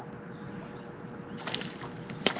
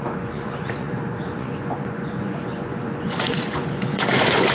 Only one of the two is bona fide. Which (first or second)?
first